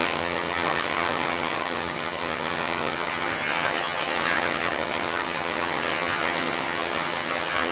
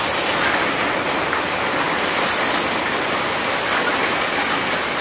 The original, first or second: second